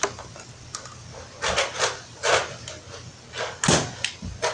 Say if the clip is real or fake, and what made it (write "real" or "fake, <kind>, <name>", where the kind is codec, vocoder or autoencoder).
real